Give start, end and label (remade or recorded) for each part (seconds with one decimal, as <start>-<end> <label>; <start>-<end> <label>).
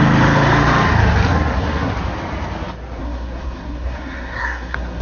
0.0-1.3 recorded; 1.3-1.9 remade; 1.9-3.0 recorded; 3.0-5.0 remade